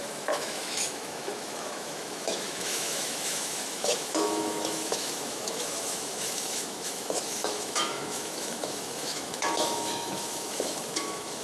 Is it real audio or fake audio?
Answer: fake